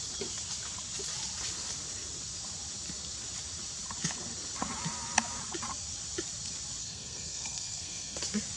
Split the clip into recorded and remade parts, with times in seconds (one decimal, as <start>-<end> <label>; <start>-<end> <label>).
0.0-6.8 recorded; 6.8-8.2 remade; 8.2-8.6 recorded